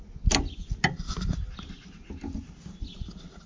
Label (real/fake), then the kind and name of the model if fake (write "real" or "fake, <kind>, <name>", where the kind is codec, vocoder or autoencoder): real